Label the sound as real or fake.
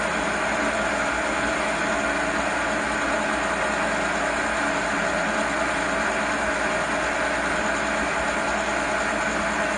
real